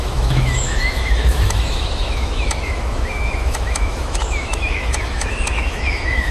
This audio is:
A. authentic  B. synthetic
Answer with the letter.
B